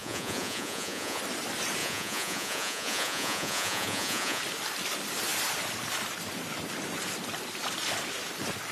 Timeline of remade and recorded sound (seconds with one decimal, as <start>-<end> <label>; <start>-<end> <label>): 0.0-1.2 remade; 1.2-1.8 recorded; 1.8-4.4 remade; 4.4-8.7 recorded